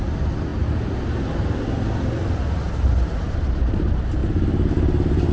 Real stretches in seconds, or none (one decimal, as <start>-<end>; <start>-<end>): 0.0-5.3